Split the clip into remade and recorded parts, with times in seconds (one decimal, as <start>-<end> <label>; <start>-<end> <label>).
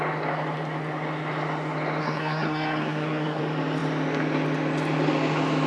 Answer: 0.0-2.0 recorded; 2.0-3.4 remade; 3.4-5.7 recorded